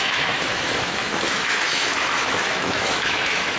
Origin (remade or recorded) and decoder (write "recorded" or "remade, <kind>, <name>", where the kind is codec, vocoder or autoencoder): remade, autoencoder, DAC-VAE